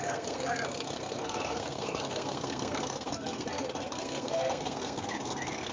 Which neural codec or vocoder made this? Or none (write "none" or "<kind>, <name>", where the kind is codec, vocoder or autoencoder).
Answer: codec, SNAC